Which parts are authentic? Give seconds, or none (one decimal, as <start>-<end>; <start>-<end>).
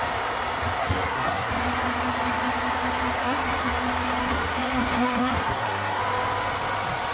0.0-0.8; 1.5-3.2; 3.7-4.2; 6.0-7.1